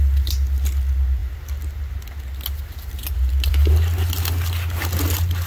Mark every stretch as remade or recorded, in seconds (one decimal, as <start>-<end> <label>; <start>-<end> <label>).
0.0-5.5 recorded